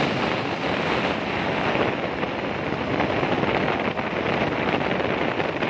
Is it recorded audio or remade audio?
recorded